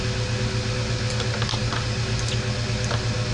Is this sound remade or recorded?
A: recorded